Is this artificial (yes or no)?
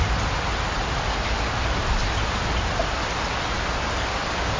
no